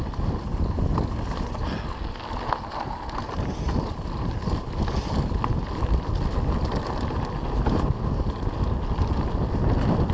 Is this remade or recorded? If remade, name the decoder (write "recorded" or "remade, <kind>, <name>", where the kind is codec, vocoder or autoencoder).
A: recorded